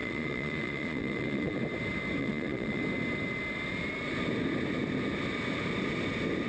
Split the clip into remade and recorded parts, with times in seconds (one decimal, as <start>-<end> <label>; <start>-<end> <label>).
0.0-1.6 remade; 1.6-2.2 recorded; 2.2-2.8 remade; 2.8-6.5 recorded